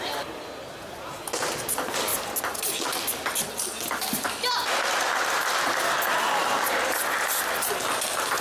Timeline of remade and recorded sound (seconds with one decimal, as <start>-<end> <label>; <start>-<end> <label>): 0.0-8.4 recorded